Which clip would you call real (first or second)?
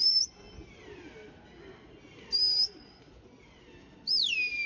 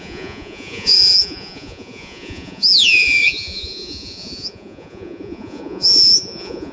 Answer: first